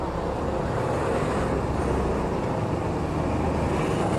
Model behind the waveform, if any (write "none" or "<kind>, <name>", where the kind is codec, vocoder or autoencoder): none